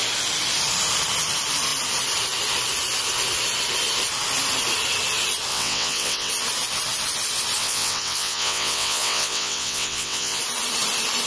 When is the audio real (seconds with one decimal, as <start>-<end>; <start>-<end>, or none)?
0.0-5.5; 6.3-7.6; 10.4-11.3